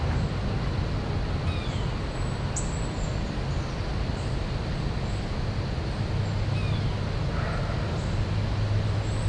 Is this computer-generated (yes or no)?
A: no